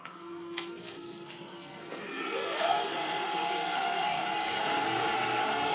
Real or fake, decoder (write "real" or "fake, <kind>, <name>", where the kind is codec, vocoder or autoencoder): fake, codec, SNAC